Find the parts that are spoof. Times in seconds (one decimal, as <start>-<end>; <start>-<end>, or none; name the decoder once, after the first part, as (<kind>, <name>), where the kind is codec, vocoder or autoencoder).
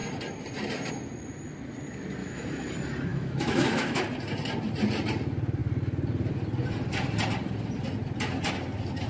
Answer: 2.2-2.7 (autoencoder, DAC-VAE); 3.1-4.0